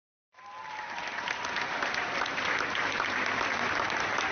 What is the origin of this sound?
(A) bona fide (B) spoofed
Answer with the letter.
A